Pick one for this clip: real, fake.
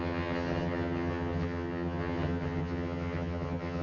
fake